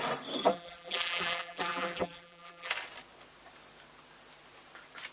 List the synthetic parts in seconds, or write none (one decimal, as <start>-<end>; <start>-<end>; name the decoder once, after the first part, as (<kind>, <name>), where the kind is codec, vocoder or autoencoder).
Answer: 0.4-2.7 (vocoder, BigVGAN v2)